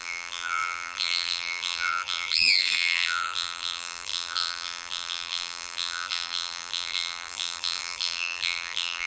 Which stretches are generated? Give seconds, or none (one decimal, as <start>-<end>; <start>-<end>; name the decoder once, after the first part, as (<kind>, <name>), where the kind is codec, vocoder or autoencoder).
0.0-9.1 (vocoder, BigVGAN v2)